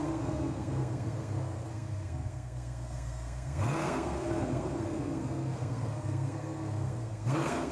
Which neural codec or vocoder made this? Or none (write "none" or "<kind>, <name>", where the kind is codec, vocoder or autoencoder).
codec, SNAC